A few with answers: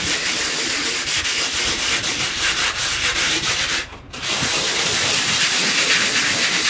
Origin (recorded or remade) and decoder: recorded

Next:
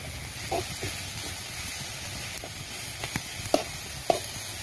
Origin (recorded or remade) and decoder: recorded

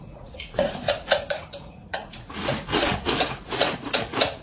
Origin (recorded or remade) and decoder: remade, vocoder, Vocos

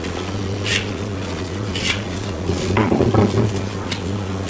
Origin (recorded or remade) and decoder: remade, vocoder, Vocos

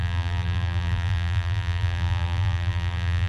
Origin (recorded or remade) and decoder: remade, vocoder, BigVGAN v2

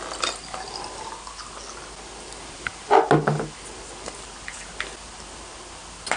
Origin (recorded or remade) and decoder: recorded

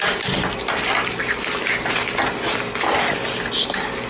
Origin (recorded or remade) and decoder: recorded